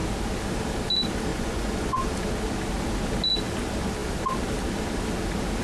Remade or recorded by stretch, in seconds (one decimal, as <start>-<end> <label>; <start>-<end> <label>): 0.0-1.3 recorded; 1.3-2.1 remade; 2.1-5.6 recorded